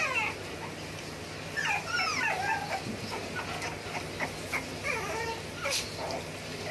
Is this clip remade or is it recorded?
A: recorded